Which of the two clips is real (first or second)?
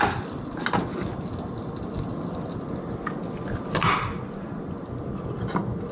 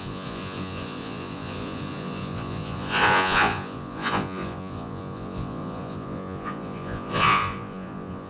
first